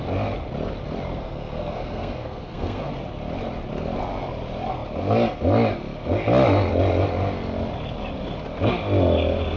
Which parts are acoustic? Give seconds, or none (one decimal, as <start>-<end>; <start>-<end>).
0.0-1.1; 2.9-9.6

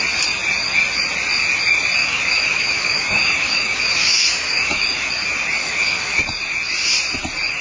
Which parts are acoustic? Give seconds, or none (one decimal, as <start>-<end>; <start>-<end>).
0.0-2.0; 5.1-5.6; 6.2-7.6

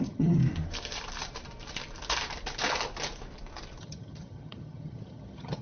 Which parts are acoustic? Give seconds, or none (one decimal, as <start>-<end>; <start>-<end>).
0.4-3.8

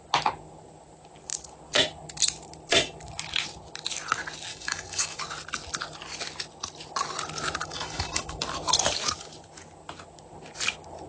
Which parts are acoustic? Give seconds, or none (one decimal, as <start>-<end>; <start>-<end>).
0.0-4.5; 5.2-7.6; 8.4-11.1

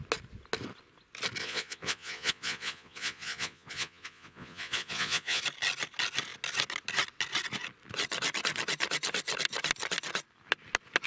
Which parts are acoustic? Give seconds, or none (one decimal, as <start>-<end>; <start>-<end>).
0.0-1.4; 5.4-11.1